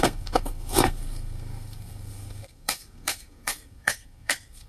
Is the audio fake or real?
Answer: fake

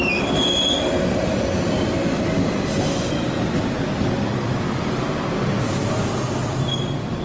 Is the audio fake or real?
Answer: real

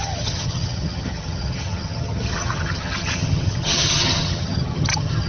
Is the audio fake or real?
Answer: fake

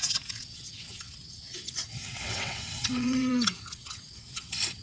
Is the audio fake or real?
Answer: fake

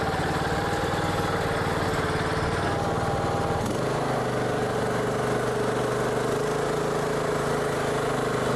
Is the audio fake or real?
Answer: real